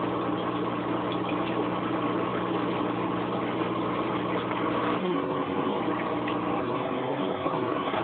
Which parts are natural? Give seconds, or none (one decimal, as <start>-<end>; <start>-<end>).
0.0-5.0; 5.8-6.6